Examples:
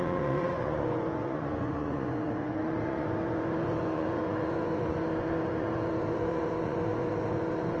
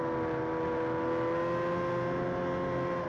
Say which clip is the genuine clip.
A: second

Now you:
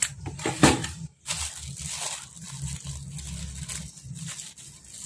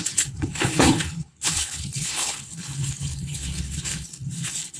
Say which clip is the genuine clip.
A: first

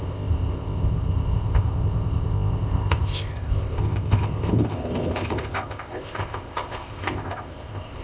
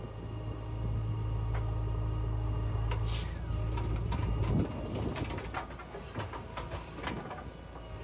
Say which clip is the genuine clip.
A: second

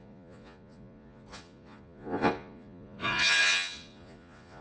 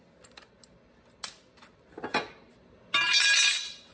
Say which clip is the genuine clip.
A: second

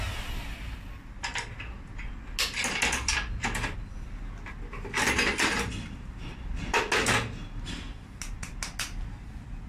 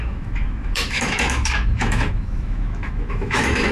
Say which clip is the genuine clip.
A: first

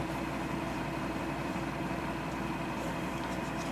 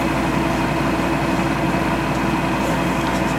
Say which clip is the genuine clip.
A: second